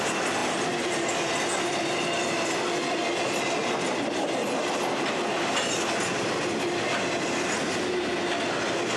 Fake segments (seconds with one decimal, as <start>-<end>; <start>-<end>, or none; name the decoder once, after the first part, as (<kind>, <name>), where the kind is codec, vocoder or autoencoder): none